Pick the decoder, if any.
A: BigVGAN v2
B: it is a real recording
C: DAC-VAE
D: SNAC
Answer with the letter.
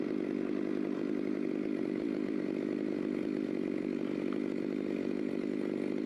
B